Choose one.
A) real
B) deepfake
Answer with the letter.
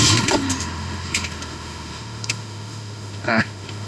B